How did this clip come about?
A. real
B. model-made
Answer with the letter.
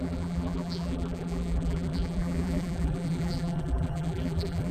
B